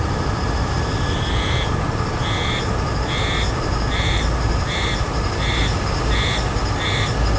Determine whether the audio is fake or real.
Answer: real